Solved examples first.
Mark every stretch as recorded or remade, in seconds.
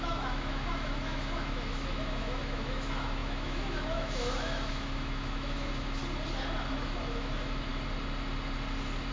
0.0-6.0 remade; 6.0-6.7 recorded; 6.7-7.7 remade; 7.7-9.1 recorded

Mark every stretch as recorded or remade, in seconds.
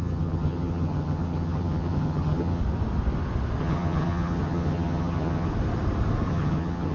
0.0-2.6 remade; 2.6-3.6 recorded; 3.6-5.5 remade; 5.5-6.3 recorded; 6.3-6.9 remade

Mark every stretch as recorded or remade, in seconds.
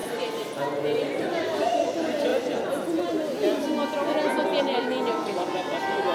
0.0-1.2 recorded; 1.2-2.3 remade; 2.3-4.6 recorded; 4.6-6.1 remade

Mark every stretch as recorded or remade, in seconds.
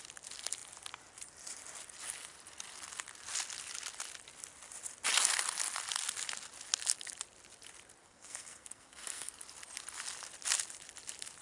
0.0-8.0 recorded; 8.0-9.3 remade; 9.3-11.4 recorded